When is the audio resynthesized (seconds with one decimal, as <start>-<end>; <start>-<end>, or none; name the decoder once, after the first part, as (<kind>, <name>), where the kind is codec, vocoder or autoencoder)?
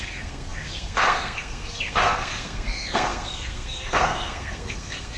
0.0-5.2 (codec, SNAC)